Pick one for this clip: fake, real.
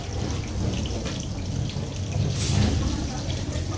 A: real